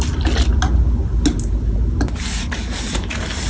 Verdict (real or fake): real